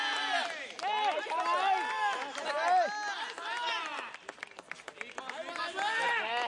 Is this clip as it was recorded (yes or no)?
yes